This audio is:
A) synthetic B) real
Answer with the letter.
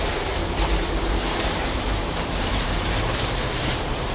A